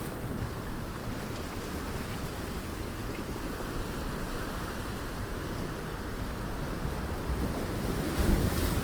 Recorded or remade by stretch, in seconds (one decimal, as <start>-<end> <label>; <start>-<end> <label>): 0.0-1.0 remade; 1.0-2.6 recorded; 2.6-3.0 remade; 3.0-8.1 recorded; 8.1-8.8 remade